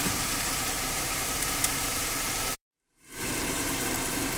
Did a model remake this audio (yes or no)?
yes